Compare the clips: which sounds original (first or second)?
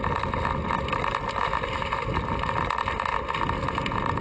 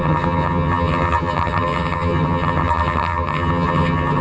first